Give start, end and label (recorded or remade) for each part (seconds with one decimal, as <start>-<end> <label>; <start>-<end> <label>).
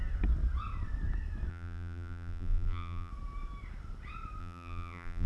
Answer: 0.0-1.5 recorded; 1.5-3.1 remade; 3.1-4.4 recorded; 4.4-5.3 remade